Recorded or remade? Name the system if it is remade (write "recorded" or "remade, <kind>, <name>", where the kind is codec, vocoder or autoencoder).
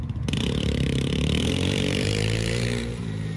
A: remade, vocoder, BigVGAN v2